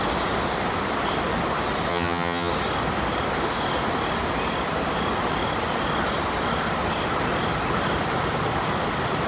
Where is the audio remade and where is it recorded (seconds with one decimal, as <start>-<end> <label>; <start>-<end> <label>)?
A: 0.0-1.9 recorded; 1.9-2.5 remade; 2.5-9.3 recorded

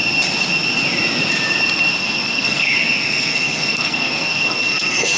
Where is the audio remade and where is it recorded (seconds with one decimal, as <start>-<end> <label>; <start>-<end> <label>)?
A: 0.0-2.0 recorded; 2.0-5.2 remade